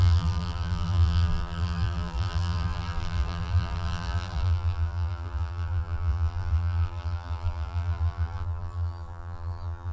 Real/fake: fake